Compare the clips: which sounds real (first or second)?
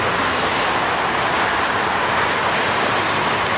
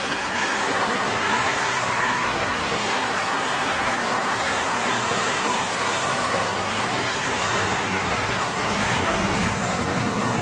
first